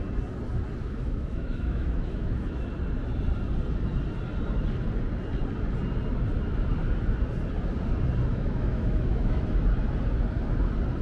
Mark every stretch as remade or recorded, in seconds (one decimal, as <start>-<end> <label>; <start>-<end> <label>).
0.0-0.8 recorded; 0.8-2.7 remade; 2.7-8.3 recorded; 8.3-9.4 remade; 9.4-11.0 recorded